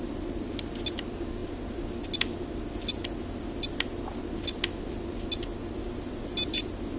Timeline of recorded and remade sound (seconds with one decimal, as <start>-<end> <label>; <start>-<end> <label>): 0.0-7.0 recorded